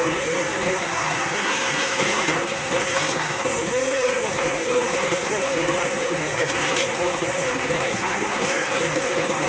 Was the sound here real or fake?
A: fake